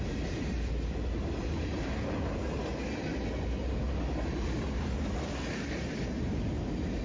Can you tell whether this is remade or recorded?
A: recorded